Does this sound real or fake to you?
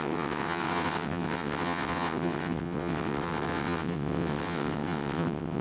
fake